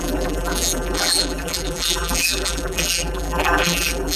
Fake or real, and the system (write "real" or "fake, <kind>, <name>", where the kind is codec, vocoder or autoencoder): fake, vocoder, BigVGAN v2